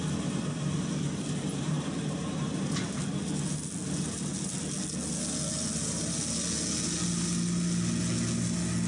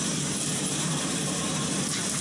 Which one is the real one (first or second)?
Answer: first